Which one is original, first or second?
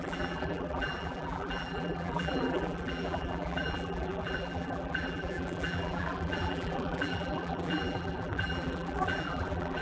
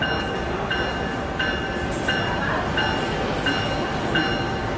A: second